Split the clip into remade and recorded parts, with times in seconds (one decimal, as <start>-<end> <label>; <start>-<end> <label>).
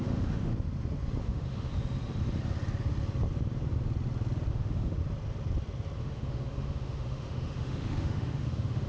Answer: 0.0-0.5 remade; 0.5-1.2 recorded; 1.2-1.7 remade; 1.7-4.5 recorded; 4.5-5.0 remade; 5.0-6.0 recorded; 6.0-8.9 remade